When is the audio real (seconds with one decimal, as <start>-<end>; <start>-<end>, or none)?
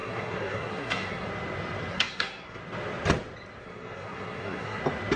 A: 1.3-1.9; 2.6-3.6; 4.8-5.2